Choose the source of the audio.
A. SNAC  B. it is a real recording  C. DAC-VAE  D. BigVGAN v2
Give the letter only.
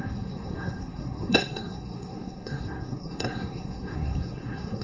A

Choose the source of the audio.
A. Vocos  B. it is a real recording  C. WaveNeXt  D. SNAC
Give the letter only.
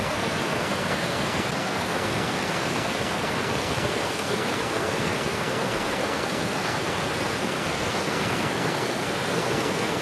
D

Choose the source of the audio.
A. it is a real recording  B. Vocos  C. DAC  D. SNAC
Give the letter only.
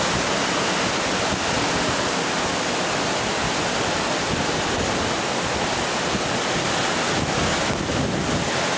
A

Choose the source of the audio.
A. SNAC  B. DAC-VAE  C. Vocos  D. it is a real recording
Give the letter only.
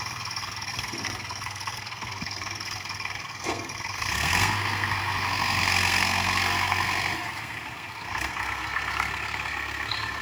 A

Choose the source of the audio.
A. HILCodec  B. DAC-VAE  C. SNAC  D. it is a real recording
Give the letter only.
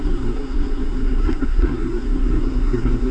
C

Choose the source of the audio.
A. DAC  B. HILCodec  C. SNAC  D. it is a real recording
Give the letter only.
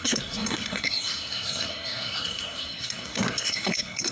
C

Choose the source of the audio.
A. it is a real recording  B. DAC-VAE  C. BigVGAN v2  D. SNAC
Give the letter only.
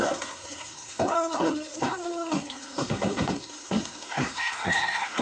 D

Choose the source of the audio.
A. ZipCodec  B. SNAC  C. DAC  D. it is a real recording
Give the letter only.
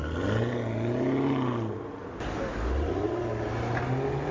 D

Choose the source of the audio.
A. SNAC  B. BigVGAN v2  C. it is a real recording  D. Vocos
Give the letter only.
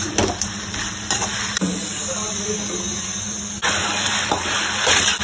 C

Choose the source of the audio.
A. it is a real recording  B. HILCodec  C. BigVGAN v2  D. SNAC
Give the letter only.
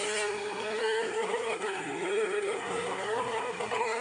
D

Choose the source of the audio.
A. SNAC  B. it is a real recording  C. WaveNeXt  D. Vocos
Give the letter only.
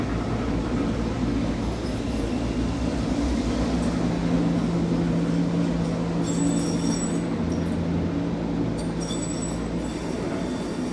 B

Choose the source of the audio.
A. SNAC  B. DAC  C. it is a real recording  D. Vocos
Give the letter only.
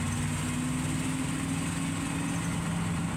C